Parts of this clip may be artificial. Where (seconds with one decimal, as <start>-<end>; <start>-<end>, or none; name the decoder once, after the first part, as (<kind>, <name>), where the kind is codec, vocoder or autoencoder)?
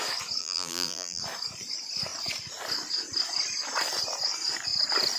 0.4-1.2 (vocoder, BigVGAN v2)